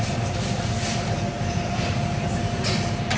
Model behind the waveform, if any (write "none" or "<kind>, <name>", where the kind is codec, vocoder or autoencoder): none